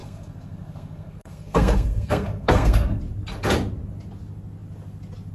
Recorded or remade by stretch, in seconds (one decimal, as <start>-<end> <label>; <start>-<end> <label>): 0.0-3.0 remade; 3.0-5.3 recorded